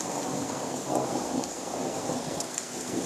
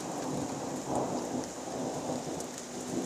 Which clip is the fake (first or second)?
first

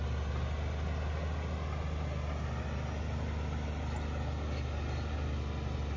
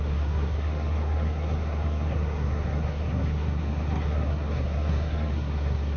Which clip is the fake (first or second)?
second